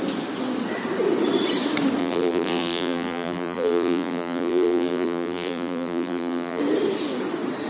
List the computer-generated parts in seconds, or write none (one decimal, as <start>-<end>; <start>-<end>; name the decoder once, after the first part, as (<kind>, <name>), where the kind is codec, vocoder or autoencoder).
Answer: 2.0-6.6 (vocoder, BigVGAN v2)